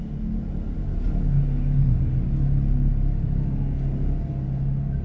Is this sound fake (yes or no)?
no